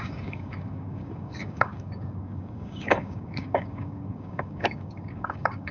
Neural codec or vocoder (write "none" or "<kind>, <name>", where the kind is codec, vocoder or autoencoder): codec, DAC